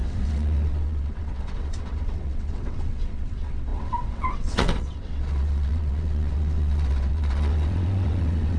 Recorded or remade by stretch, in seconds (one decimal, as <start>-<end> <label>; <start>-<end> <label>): 0.0-8.6 remade